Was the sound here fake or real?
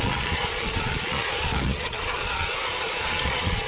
fake